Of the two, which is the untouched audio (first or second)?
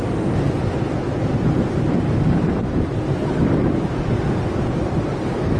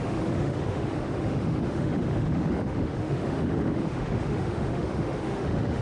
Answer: first